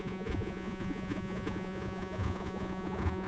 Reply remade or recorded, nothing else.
remade